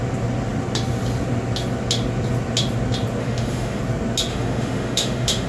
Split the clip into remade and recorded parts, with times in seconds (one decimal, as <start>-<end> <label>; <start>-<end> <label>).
0.0-3.2 recorded; 3.2-3.8 remade; 3.8-4.3 recorded; 4.3-5.5 remade